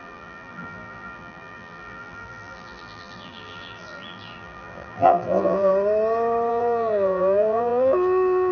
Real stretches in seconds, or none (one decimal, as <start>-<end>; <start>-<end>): 5.7-6.5